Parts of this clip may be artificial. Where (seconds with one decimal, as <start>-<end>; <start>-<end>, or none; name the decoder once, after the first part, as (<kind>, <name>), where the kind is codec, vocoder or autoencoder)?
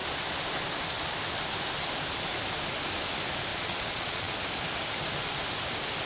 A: 3.5-4.3 (vocoder, Vocos)